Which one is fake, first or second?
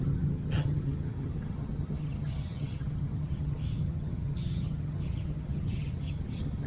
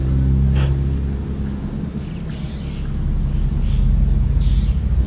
first